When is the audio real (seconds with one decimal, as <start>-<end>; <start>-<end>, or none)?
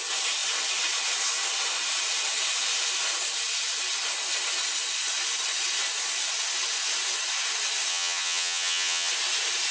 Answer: 0.0-7.9; 9.1-9.7